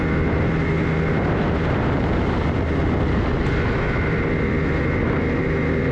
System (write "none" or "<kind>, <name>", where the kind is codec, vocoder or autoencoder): none